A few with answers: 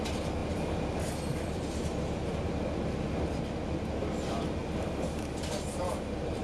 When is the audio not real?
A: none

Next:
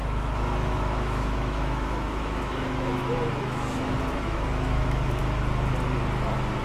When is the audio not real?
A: 0.0-5.2 (autoencoder, DAC-VAE)